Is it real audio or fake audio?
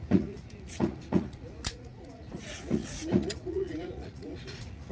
fake